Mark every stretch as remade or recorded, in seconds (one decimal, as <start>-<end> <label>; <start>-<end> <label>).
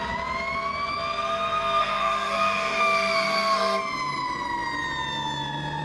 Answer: 0.0-1.8 recorded; 1.8-3.8 remade; 3.8-5.8 recorded